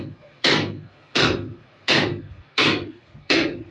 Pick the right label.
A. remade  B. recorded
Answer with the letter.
A